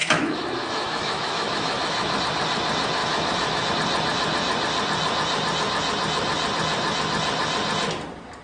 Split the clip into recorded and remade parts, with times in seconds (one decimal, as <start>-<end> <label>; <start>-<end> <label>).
0.0-2.2 remade; 2.2-3.0 recorded; 3.0-3.7 remade; 3.7-8.4 recorded